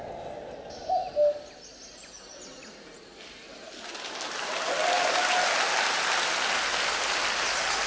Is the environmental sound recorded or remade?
recorded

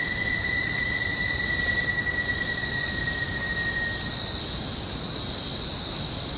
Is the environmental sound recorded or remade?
recorded